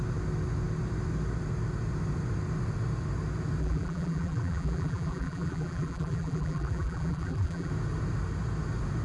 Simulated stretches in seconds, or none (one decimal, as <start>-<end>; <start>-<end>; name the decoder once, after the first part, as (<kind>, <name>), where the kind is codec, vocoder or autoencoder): 3.6-7.7 (vocoder, BigVGAN v2)